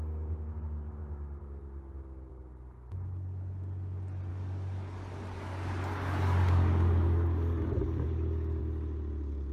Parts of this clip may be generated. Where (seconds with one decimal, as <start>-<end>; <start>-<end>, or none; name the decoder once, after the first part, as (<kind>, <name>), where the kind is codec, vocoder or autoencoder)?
4.3-8.6 (codec, DAC)